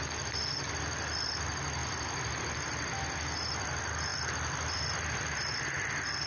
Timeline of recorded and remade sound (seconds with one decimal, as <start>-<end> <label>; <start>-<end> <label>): 0.0-6.3 recorded